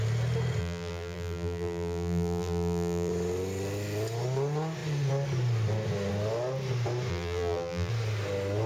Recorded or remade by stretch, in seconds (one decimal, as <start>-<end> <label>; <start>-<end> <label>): 0.0-0.6 recorded; 0.6-3.1 remade; 3.1-7.1 recorded; 7.1-7.9 remade; 7.9-8.7 recorded